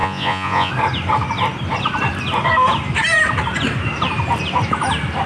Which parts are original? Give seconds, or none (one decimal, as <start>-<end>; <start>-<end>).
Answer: 0.7-5.3